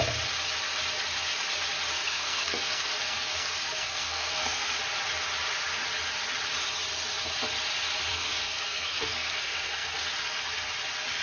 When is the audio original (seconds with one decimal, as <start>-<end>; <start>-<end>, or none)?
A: 0.0-1.9; 4.7-8.1; 10.0-11.2